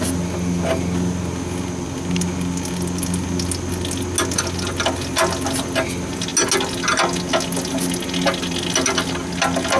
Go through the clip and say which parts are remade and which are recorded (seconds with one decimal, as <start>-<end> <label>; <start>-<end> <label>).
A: 0.0-9.8 recorded